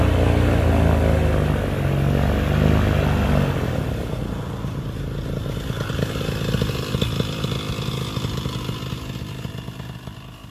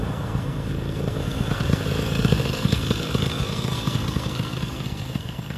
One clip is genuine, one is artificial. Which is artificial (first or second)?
second